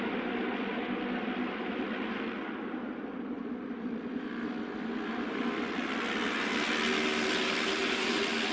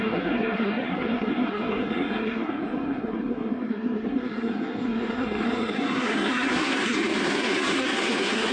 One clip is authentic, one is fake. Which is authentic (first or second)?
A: first